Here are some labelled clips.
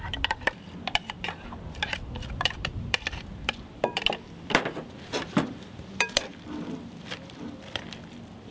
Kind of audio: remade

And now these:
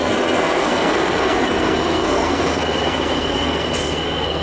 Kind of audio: remade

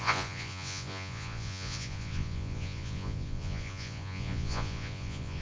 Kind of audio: remade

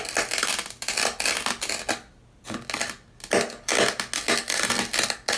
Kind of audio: recorded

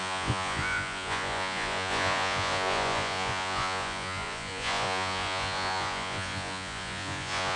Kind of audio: remade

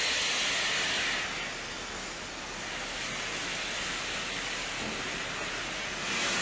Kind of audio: recorded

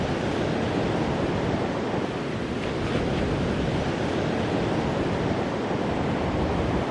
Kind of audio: recorded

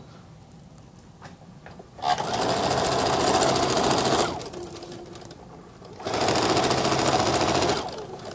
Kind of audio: recorded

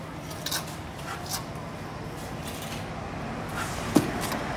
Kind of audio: recorded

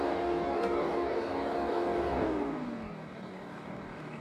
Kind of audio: remade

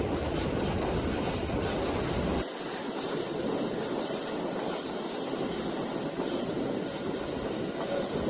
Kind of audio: recorded